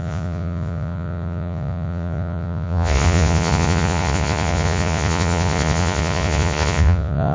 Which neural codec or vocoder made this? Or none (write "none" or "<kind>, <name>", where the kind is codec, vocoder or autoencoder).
vocoder, Vocos